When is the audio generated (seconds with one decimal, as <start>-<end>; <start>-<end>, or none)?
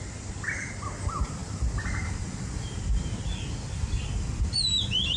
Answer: none